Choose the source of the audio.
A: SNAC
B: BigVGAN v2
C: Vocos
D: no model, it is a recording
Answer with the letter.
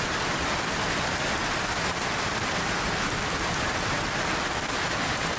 D